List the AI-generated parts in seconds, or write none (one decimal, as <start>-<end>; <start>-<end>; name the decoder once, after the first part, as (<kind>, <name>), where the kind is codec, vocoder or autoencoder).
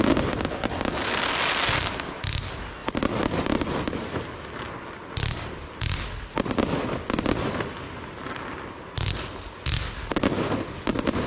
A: none